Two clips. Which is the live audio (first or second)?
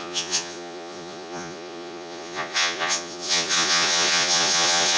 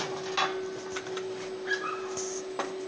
second